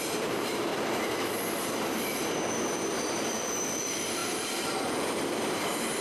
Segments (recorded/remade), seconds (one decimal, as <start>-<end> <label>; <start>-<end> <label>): 0.0-0.7 remade; 0.7-2.7 recorded; 2.7-6.0 remade